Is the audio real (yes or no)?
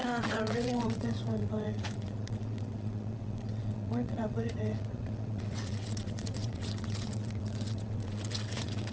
no